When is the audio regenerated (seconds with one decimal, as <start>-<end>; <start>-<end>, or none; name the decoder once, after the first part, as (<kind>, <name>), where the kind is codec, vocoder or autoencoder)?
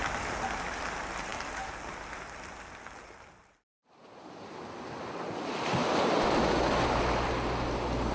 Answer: 5.8-6.5 (vocoder, BigVGAN v2)